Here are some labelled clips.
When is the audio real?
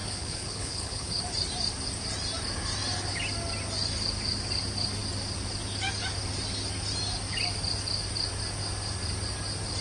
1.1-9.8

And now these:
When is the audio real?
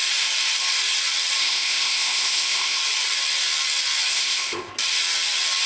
0.0-1.4; 2.8-4.1; 4.7-5.7